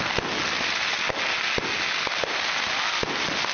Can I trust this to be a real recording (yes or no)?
yes